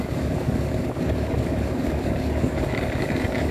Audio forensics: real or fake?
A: fake